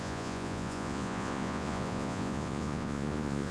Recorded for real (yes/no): no